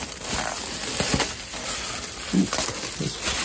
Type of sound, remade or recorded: recorded